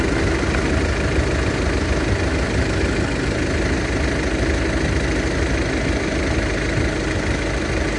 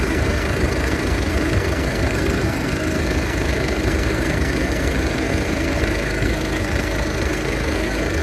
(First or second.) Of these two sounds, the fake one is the second